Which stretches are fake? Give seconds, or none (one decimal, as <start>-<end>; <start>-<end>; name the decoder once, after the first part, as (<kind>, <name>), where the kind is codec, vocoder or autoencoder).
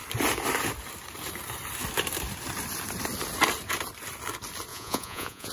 4.7-5.5 (vocoder, Vocos)